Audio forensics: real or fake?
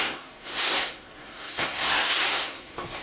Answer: fake